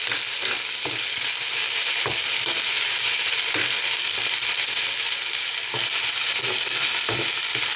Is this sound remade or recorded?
recorded